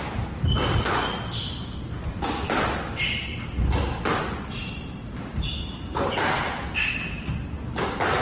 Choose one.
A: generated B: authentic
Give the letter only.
B